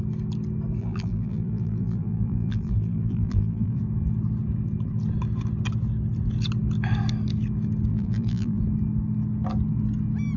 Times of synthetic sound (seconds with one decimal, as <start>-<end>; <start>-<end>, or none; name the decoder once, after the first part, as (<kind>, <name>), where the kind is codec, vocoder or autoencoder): 0.8-3.8 (vocoder, BigVGAN v2); 7.9-8.6